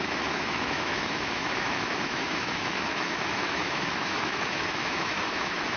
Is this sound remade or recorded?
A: remade